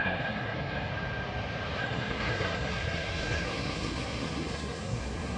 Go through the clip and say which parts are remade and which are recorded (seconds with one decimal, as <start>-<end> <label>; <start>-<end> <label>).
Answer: 0.0-0.9 remade; 0.9-1.8 recorded; 1.8-5.4 remade